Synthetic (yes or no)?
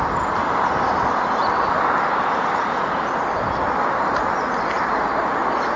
no